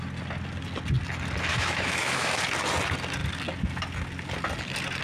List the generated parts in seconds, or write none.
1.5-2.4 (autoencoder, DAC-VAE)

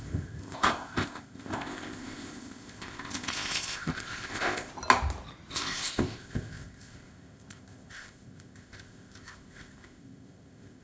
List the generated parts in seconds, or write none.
0.0-4.7 (codec, ZipCodec); 5.5-10.8

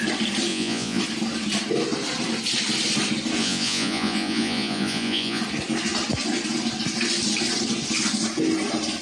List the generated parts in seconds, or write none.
0.5-1.0 (vocoder, Vocos); 3.4-5.4

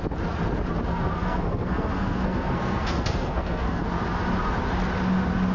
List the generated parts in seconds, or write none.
0.9-3.8 (codec, SNAC)